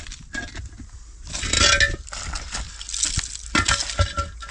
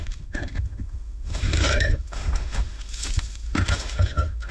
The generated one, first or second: second